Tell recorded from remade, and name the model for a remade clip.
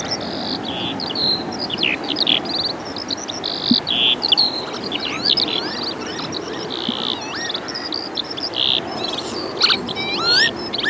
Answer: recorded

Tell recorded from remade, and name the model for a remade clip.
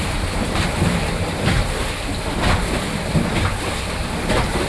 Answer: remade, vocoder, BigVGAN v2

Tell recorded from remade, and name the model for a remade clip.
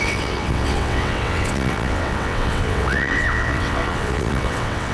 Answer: remade, vocoder, WaveNeXt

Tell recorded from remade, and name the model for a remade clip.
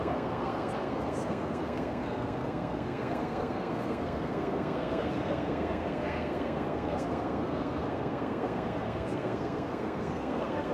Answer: remade, codec, SNAC